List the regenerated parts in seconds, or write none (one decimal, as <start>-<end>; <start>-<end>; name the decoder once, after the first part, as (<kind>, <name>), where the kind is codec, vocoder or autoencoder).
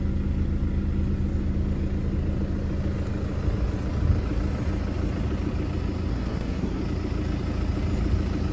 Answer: 6.1-6.8 (codec, SNAC)